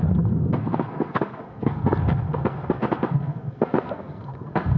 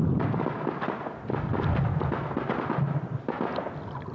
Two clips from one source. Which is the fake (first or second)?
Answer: first